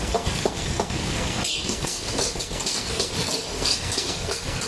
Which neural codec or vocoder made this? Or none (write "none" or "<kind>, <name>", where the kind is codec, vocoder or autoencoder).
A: codec, SNAC